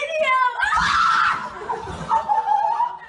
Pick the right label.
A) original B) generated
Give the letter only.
A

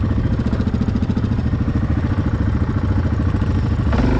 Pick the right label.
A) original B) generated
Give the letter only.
A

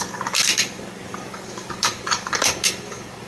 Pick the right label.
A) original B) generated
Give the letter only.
B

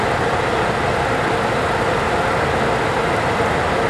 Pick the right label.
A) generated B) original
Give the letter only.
B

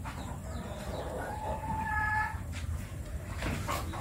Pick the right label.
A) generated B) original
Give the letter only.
A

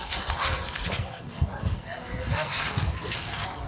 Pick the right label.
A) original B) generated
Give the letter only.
B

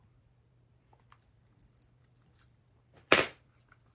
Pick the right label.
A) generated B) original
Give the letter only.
A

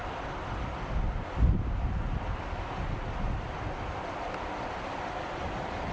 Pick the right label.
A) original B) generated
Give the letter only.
A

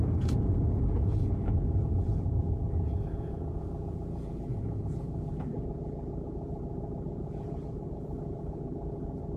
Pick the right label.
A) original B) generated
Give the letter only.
B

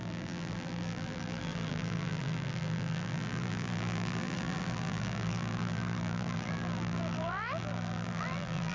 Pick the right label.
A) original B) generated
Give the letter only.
B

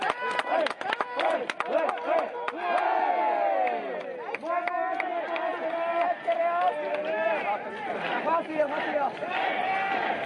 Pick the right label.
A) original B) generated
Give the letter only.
A